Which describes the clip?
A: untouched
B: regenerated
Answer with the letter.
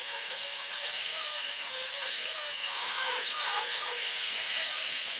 B